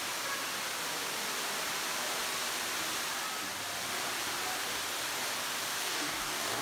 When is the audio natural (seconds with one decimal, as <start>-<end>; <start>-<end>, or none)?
0.0-5.8